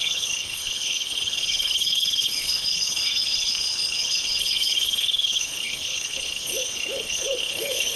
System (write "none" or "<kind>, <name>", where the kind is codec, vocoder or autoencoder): codec, HILCodec